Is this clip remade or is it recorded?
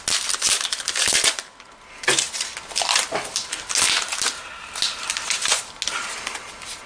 recorded